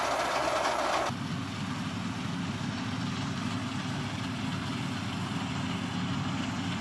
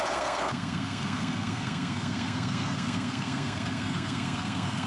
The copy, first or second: second